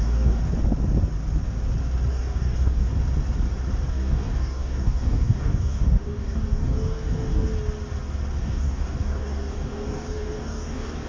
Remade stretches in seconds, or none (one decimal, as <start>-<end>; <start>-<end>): 0.0-0.4; 2.1-2.9; 3.9-7.5; 8.4-11.1